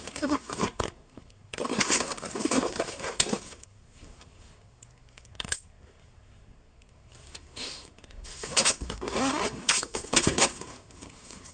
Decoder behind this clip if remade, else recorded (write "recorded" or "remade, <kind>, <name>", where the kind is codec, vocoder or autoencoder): remade, codec, SNAC